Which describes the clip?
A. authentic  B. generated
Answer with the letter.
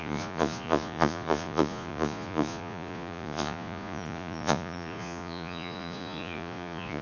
B